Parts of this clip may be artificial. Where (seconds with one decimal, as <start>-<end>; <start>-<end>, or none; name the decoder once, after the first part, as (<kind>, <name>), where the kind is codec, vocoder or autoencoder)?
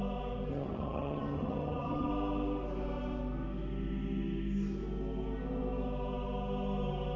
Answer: 0.5-2.1 (vocoder, HiFi-GAN)